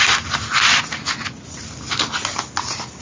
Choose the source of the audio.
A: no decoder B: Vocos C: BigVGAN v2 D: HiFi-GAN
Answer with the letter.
A